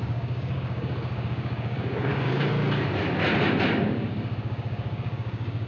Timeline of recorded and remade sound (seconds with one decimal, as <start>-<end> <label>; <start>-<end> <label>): 0.0-2.5 remade; 2.5-3.8 recorded; 3.8-5.7 remade